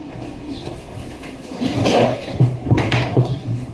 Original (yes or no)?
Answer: no